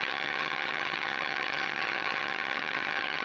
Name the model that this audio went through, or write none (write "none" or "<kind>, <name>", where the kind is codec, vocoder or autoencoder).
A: vocoder, HiFi-GAN